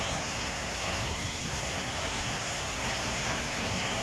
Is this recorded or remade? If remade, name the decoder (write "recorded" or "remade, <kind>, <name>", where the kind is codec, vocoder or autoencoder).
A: remade, codec, SNAC